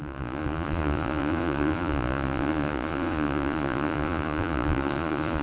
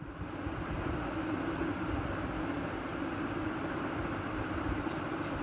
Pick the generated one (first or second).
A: first